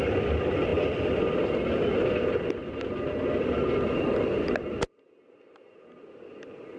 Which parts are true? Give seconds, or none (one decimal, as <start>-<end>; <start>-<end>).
0.0-6.8